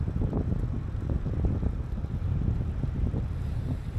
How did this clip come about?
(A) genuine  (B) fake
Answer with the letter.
B